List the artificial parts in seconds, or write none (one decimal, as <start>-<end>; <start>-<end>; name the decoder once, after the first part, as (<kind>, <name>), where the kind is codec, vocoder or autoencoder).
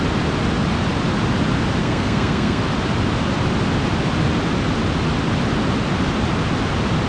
1.8-2.6 (codec, SNAC)